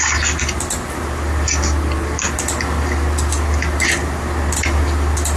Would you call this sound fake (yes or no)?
no